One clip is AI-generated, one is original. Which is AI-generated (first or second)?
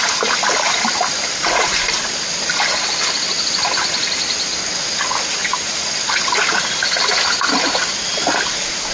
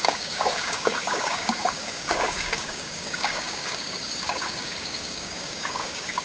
second